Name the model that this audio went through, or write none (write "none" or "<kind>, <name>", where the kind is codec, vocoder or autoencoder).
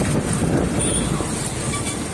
none